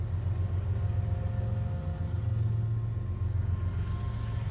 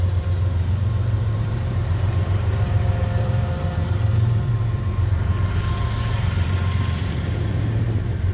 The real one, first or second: first